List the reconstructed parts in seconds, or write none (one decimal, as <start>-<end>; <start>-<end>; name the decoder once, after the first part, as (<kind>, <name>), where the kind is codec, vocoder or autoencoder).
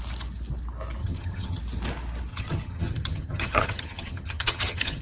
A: 1.0-1.6 (vocoder, HiFi-GAN); 2.3-5.0